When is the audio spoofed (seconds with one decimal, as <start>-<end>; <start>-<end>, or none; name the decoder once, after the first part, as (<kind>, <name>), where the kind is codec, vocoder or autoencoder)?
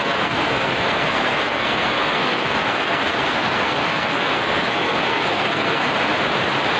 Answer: 0.0-5.9 (codec, SNAC)